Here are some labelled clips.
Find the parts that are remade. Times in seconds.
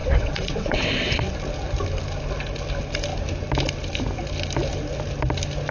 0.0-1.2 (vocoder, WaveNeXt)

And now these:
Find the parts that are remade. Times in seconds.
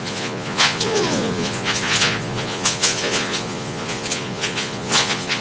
0.0-5.4 (vocoder, Vocos)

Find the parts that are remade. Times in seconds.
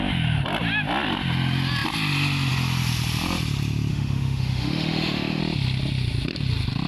3.9-5.4 (autoencoder, DAC-VAE)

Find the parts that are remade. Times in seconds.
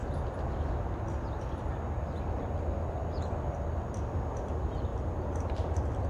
4.9-6.1 (vocoder, BigVGAN v2)